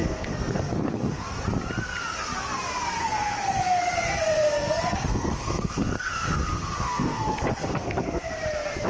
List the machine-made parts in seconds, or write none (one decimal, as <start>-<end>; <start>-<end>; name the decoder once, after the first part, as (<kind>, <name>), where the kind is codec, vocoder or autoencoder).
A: 0.0-1.2 (codec, SNAC); 3.0-8.3